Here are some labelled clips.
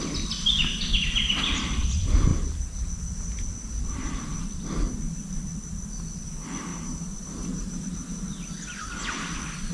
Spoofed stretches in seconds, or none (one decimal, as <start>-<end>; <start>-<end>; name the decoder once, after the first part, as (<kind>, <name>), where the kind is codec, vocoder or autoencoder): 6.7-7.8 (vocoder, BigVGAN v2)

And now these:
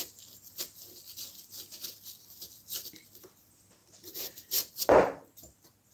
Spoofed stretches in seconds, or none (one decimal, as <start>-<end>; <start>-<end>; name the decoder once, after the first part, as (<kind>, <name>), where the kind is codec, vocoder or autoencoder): 3.8-4.7 (vocoder, BigVGAN v2)

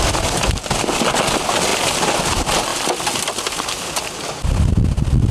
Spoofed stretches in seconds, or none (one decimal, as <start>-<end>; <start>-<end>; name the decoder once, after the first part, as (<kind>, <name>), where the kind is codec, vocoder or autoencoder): none